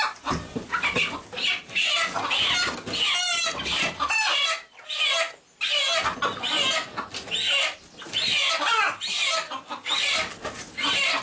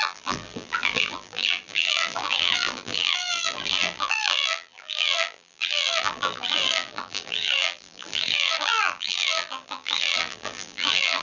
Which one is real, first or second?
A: first